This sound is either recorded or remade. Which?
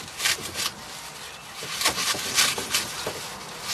recorded